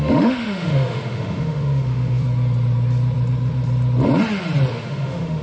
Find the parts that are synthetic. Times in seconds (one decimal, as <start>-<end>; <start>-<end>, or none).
0.0-2.2; 4.7-5.4